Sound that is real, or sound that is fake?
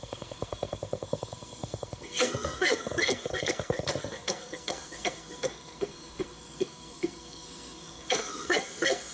fake